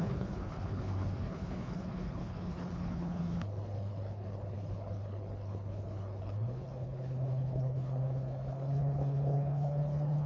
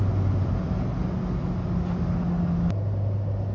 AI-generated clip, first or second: first